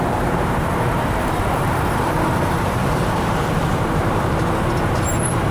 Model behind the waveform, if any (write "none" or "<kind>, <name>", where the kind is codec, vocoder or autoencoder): vocoder, BigVGAN v2